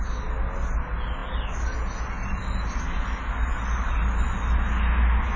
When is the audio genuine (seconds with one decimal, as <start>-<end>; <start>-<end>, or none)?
0.0-5.4